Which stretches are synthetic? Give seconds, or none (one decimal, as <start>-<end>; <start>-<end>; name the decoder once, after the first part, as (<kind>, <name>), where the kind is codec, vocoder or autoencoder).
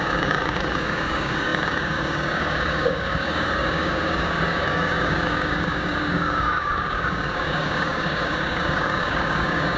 0.0-9.8 (codec, DAC)